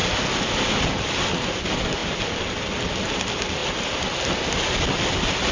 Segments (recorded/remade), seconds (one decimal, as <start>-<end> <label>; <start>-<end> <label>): 0.0-5.5 recorded